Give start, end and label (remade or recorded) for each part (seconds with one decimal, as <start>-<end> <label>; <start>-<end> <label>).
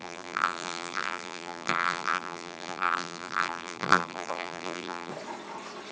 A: 0.0-5.1 remade; 5.1-5.9 recorded